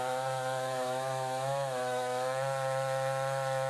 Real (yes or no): no